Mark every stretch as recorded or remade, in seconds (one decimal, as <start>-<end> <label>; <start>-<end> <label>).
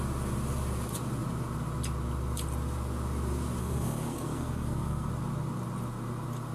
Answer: 0.0-3.6 recorded; 3.6-5.1 remade; 5.1-6.5 recorded